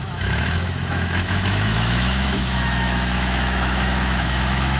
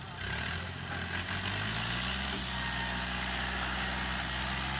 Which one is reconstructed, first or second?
first